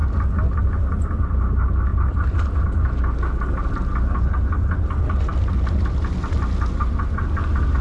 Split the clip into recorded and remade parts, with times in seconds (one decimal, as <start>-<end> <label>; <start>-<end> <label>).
0.0-1.9 recorded; 1.9-3.5 remade; 3.5-7.8 recorded